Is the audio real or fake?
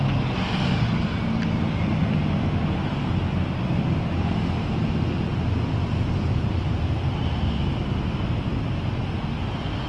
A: real